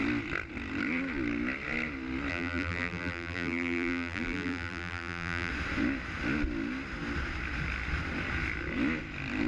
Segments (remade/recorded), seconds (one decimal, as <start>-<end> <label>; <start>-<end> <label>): 0.0-2.3 recorded; 2.3-5.5 remade; 5.5-9.5 recorded